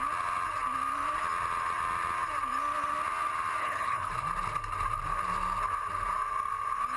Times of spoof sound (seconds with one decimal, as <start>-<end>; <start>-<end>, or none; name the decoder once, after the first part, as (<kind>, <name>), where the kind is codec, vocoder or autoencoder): 3.6-4.1 (codec, HILCodec)